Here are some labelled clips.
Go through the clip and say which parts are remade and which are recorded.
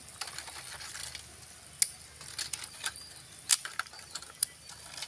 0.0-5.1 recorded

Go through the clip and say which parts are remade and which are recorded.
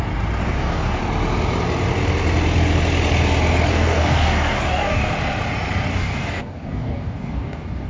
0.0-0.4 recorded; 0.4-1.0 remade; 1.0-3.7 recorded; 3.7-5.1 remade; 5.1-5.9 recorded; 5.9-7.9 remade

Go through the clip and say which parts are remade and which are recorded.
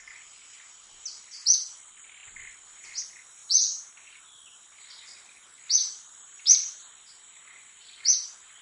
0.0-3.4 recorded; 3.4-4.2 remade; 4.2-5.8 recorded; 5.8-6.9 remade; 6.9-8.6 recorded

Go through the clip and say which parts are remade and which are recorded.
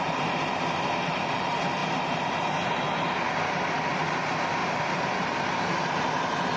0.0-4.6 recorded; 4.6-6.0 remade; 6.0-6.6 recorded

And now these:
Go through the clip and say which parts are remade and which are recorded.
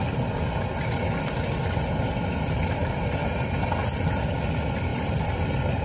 0.0-4.9 recorded; 4.9-5.8 remade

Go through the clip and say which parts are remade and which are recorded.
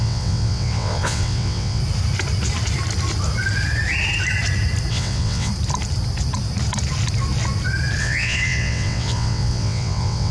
0.0-1.8 remade; 1.8-4.9 recorded; 4.9-5.5 remade; 5.5-8.0 recorded; 8.0-10.3 remade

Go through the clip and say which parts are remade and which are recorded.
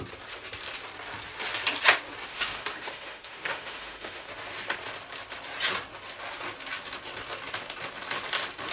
0.0-2.3 recorded; 2.3-4.3 remade; 4.3-8.7 recorded